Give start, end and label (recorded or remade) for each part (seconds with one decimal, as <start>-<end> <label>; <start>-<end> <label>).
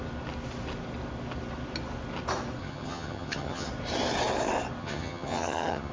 0.0-2.6 recorded; 2.6-3.7 remade; 3.7-4.8 recorded; 4.8-5.9 remade